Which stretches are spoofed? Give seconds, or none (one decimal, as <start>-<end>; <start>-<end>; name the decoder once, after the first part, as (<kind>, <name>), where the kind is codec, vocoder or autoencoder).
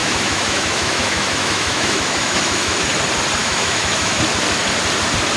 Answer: 0.0-2.8 (autoencoder, DAC-VAE); 3.4-4.2